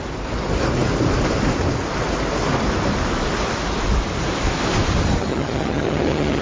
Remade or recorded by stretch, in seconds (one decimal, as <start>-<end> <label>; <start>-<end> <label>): 0.0-5.2 recorded; 5.2-6.4 remade